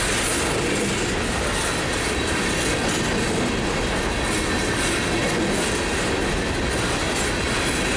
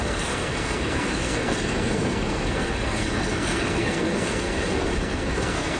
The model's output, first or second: second